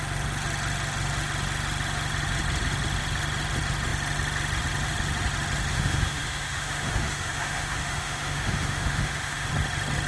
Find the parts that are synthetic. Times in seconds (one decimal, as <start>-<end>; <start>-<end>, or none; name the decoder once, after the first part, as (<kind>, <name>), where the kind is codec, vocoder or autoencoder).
5.7-9.5 (autoencoder, DAC-VAE)

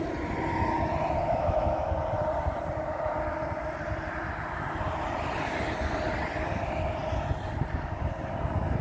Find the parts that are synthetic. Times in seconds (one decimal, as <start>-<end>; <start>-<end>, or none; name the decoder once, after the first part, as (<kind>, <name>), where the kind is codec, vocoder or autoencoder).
1.2-1.9 (autoencoder, DAC-VAE)